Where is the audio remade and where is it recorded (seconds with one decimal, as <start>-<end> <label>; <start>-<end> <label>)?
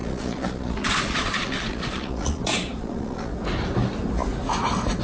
0.0-2.4 remade; 2.4-2.8 recorded; 2.8-3.3 remade; 3.3-5.0 recorded